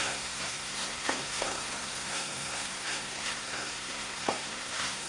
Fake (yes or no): yes